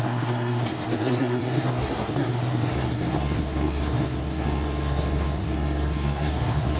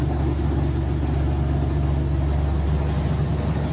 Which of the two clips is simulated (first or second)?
first